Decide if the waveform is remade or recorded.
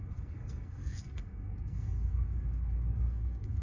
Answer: remade